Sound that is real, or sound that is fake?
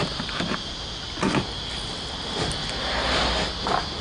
real